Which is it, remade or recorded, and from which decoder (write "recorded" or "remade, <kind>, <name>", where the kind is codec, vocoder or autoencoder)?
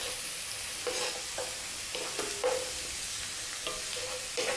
recorded